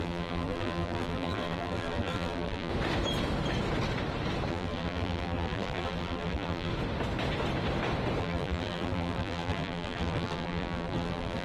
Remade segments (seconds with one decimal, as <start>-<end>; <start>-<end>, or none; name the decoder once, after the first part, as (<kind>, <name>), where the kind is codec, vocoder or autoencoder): 0.0-2.7 (vocoder, BigVGAN v2); 4.5-6.7; 8.2-11.4

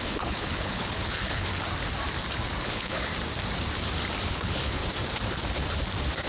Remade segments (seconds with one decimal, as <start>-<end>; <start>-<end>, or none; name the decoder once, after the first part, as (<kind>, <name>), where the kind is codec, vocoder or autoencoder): 0.0-1.5 (codec, HILCodec); 2.6-3.1; 4.3-4.8

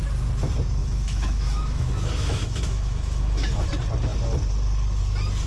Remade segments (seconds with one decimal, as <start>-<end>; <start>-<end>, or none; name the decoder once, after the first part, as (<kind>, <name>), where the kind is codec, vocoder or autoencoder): 0.8-3.5 (autoencoder, DAC-VAE)